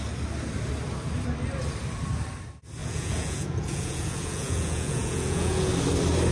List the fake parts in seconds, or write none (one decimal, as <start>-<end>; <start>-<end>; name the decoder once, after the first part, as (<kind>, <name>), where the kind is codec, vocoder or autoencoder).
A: 2.8-5.7 (vocoder, Vocos)